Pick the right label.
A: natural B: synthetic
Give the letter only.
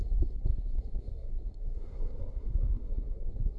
B